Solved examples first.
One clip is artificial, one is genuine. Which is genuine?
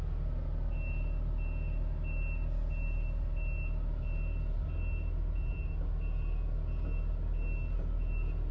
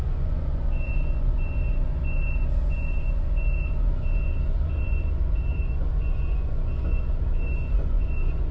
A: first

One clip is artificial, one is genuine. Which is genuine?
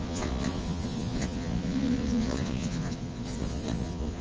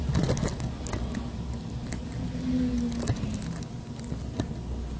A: second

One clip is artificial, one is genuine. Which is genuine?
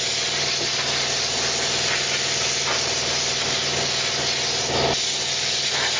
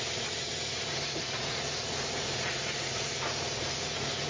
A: first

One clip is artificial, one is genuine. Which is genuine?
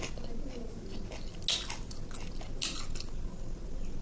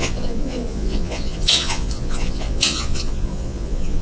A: first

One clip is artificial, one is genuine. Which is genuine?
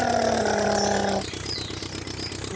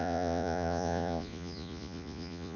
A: first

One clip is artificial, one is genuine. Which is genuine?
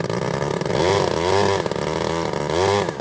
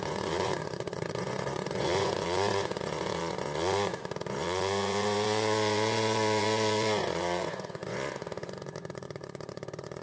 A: first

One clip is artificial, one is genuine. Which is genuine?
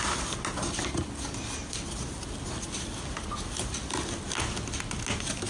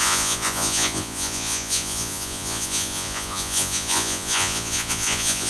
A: first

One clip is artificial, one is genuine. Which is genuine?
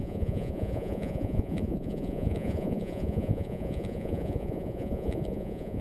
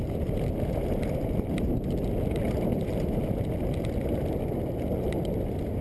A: second